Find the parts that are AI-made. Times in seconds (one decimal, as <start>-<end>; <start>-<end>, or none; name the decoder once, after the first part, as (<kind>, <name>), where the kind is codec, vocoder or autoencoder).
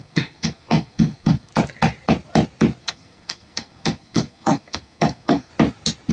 0.0-1.5 (codec, SNAC); 2.8-5.5